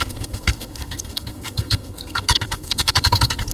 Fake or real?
fake